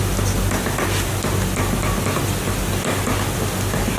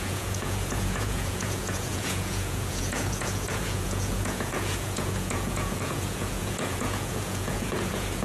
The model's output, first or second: second